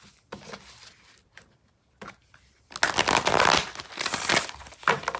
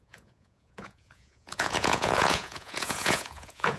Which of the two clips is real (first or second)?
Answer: first